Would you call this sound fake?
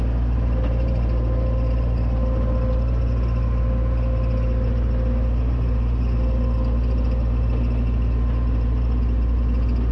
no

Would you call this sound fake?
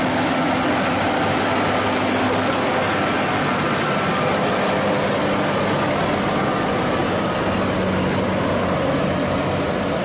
no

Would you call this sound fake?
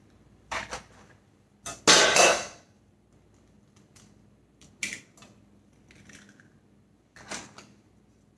no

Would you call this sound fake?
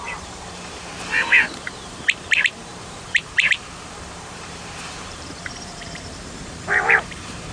yes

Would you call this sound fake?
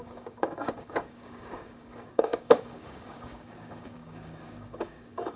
yes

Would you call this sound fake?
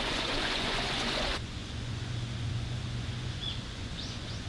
yes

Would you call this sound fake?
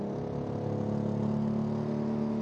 no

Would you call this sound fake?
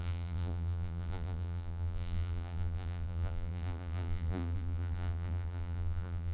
yes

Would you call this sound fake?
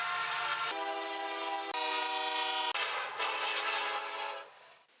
no